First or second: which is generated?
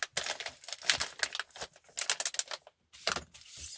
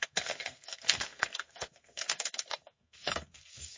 second